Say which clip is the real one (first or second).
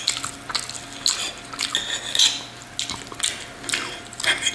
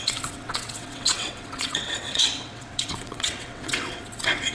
first